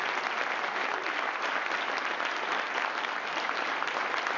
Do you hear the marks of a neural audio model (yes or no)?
no